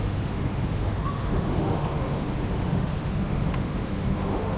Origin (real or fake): fake